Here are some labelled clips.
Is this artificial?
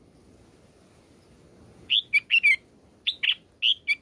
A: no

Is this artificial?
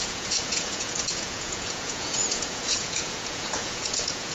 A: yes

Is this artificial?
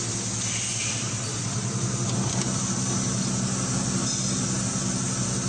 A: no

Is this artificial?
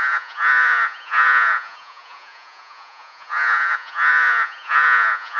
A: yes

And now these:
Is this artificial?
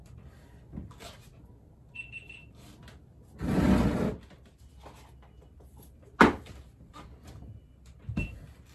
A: no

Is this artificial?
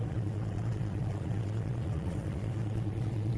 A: yes